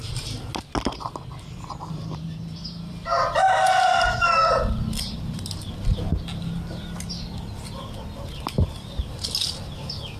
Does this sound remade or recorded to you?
recorded